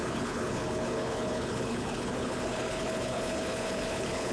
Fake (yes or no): yes